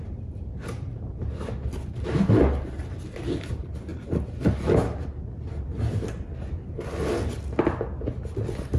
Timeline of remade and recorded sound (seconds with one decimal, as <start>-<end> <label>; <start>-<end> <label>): 0.0-8.8 recorded